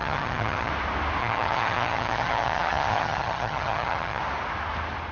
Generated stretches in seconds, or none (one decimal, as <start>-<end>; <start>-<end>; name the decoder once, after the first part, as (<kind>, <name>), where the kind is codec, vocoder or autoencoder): 0.0-0.7 (vocoder, HiFi-GAN); 1.2-4.2